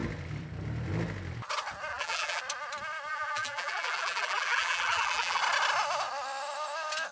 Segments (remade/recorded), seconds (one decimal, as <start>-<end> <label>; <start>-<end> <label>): 0.0-1.9 recorded; 1.9-2.4 remade; 2.4-3.1 recorded; 3.1-5.4 remade; 5.4-7.1 recorded